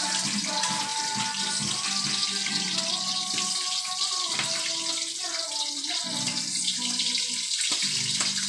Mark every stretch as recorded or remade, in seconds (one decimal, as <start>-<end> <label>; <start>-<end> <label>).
0.0-8.5 recorded